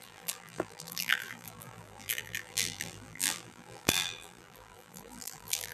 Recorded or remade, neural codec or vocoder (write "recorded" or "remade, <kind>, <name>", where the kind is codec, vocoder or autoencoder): remade, vocoder, BigVGAN v2